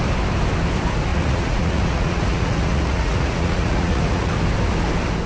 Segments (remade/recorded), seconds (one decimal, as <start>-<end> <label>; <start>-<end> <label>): 0.0-1.1 recorded; 1.1-4.3 remade; 4.3-5.3 recorded